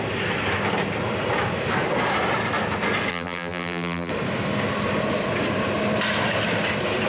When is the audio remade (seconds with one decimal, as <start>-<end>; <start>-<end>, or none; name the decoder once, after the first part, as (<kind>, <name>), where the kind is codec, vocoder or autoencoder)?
3.1-4.1 (vocoder, BigVGAN v2)